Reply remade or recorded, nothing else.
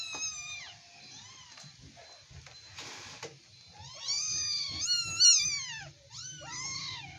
recorded